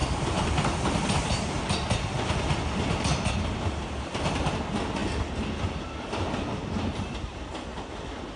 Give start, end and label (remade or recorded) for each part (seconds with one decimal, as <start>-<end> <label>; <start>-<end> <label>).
0.0-0.9 remade; 0.9-8.4 recorded